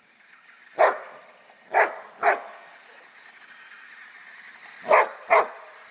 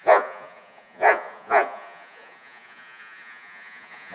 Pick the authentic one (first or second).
first